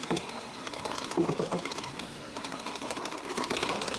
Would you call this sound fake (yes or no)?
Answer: yes